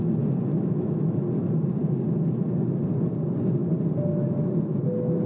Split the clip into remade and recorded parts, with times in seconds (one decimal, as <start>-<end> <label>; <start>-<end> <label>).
0.0-0.5 recorded; 0.5-1.2 remade; 1.2-5.3 recorded